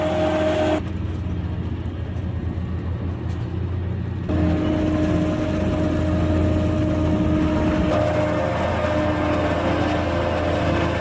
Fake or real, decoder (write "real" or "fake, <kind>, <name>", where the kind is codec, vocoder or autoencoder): real